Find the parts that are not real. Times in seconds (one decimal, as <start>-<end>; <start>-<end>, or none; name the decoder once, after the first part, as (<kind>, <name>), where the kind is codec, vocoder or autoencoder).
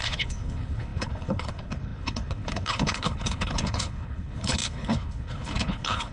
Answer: 0.0-6.1 (codec, HILCodec)